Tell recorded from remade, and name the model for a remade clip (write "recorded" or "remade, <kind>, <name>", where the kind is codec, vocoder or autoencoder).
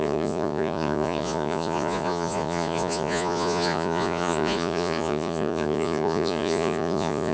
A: remade, vocoder, Vocos